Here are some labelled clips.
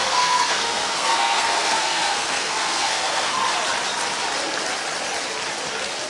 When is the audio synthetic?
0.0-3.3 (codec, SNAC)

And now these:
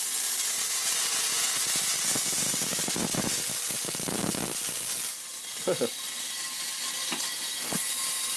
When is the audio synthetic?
none

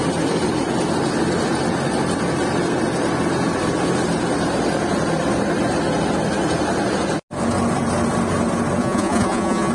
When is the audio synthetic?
8.8-9.7 (vocoder, Vocos)

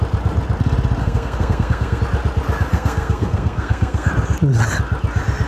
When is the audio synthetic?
1.0-2.0 (codec, SNAC); 2.7-4.1